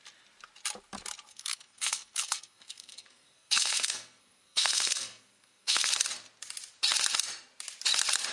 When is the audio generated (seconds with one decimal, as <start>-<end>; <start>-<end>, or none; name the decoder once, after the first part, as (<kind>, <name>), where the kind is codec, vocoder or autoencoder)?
1.3-5.9 (codec, SNAC)